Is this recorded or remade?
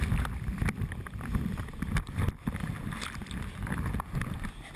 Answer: remade